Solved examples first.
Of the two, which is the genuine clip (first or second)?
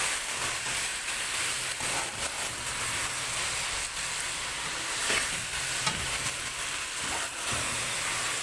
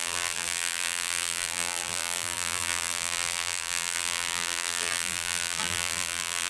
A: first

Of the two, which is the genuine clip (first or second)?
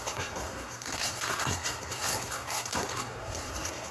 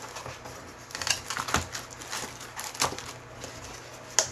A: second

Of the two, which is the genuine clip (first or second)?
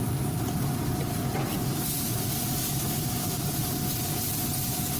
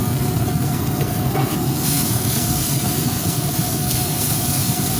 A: first